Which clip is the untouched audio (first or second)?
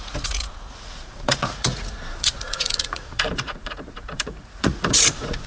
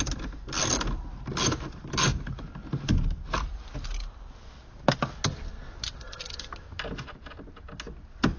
second